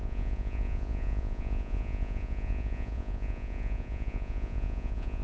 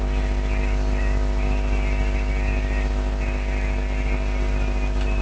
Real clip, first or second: second